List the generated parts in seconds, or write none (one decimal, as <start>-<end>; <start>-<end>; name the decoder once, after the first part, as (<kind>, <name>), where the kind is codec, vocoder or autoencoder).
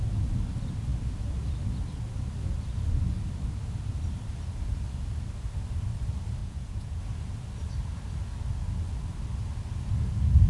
6.4-7.0 (vocoder, Vocos)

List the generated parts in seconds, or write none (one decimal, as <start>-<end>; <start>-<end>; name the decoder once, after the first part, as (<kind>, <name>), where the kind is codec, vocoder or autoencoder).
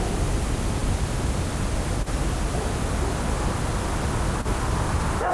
none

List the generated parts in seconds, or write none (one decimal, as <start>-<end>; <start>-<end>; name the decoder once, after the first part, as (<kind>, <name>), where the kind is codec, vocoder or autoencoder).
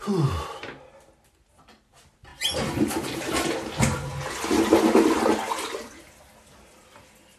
none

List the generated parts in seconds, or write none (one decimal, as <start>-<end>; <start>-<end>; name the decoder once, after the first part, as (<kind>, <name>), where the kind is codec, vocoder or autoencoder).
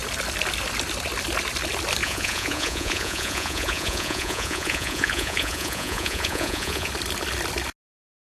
2.0-6.9 (vocoder, Vocos)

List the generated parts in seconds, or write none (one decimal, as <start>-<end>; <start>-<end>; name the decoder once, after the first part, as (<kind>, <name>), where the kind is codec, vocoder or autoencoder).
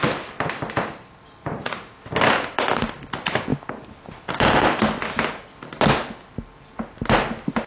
1.4-1.9 (vocoder, Vocos)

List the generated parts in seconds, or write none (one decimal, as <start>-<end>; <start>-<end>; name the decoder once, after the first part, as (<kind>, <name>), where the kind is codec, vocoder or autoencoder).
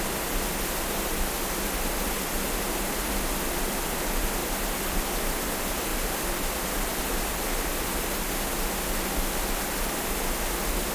4.4-5.2 (vocoder, BigVGAN v2)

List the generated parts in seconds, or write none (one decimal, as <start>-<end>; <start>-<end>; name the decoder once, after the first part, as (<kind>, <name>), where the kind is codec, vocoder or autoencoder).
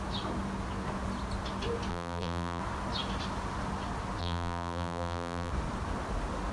1.9-2.6 (vocoder, BigVGAN v2); 4.2-5.5